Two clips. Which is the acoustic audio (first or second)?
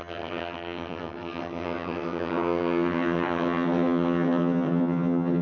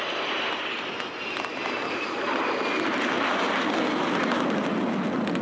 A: second